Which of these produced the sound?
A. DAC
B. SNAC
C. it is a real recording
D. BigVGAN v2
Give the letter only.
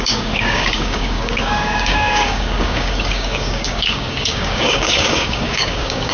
A